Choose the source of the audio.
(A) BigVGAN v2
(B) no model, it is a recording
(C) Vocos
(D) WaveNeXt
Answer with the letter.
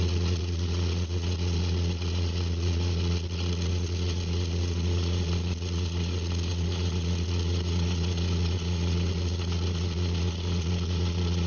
C